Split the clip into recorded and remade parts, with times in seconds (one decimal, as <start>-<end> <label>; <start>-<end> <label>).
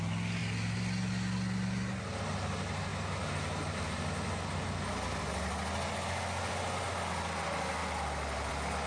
0.0-8.9 recorded